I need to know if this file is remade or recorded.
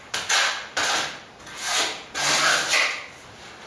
recorded